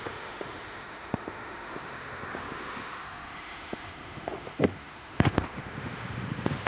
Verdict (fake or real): fake